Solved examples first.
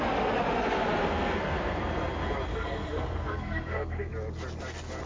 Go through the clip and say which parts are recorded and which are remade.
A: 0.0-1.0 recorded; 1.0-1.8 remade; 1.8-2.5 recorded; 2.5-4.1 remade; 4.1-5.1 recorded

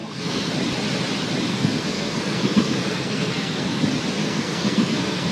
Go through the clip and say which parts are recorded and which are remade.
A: 0.0-0.5 remade; 0.5-1.5 recorded; 1.5-3.8 remade; 3.8-4.2 recorded; 4.2-5.3 remade

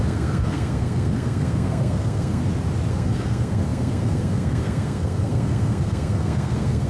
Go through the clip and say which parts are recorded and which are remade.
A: 0.0-2.4 remade; 2.4-2.9 recorded; 2.9-6.9 remade

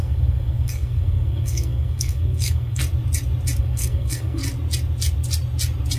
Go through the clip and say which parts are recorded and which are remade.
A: 0.0-2.8 remade; 2.8-3.6 recorded; 3.6-4.4 remade; 4.4-6.0 recorded

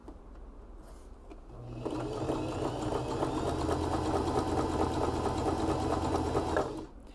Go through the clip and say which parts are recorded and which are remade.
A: 0.0-7.1 recorded

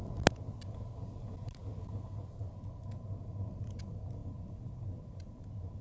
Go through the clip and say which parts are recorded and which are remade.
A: 0.0-5.8 recorded

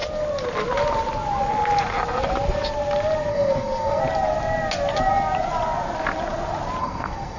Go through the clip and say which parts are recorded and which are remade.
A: 0.0-3.3 recorded; 3.3-4.0 remade; 4.0-6.8 recorded; 6.8-7.4 remade